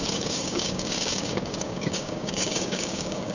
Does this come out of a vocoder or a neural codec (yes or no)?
yes